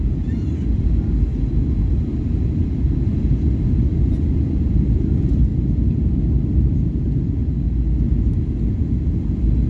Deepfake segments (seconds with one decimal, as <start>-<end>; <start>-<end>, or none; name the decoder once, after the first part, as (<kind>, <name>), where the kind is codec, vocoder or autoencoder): 0.0-1.3 (vocoder, BigVGAN v2); 2.1-5.5; 6.3-7.4; 9.1-9.7